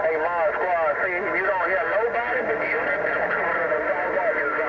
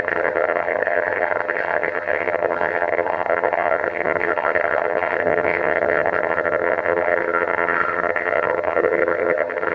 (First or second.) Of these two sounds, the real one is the first